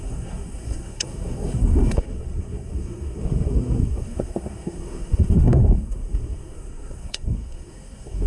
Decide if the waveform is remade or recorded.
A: remade